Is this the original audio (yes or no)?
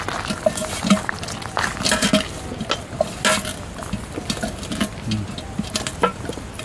yes